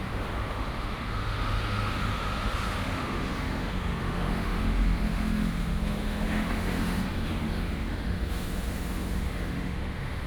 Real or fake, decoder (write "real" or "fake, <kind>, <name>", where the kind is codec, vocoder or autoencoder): fake, autoencoder, DAC-VAE